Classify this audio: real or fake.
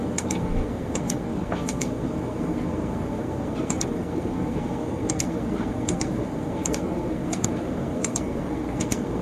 fake